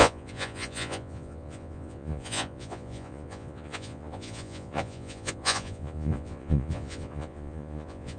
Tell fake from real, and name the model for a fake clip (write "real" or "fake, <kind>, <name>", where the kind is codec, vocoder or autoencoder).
fake, vocoder, Vocos